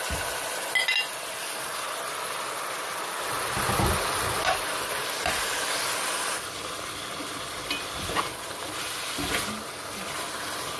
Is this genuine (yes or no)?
yes